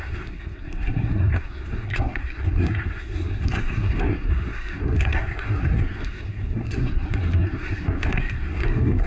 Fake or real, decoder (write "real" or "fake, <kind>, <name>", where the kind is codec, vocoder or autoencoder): fake, codec, SNAC